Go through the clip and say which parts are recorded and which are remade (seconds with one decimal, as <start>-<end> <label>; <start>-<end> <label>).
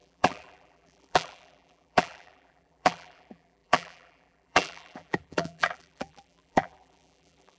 0.0-7.6 remade